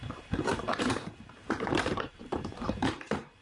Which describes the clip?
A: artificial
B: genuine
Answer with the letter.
A